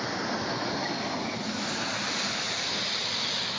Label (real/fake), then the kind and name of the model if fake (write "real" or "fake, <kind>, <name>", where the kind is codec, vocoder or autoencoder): fake, vocoder, BigVGAN v2